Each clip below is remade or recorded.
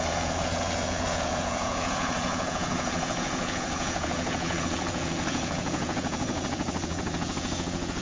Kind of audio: remade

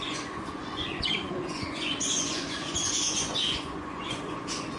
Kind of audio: remade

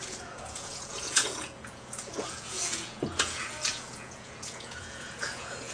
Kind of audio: remade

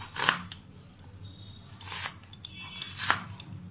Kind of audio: recorded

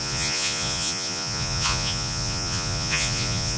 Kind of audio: remade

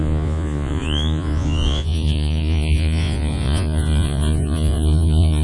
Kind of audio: remade